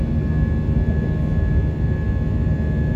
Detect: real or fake real